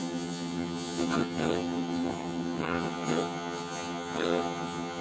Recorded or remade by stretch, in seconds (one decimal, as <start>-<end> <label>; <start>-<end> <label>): 0.0-5.0 remade